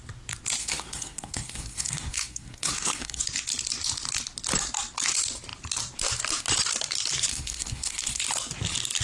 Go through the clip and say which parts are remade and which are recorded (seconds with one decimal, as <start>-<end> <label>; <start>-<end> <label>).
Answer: 0.0-0.6 recorded; 0.6-3.2 remade; 3.2-7.3 recorded; 7.3-8.2 remade; 8.2-9.0 recorded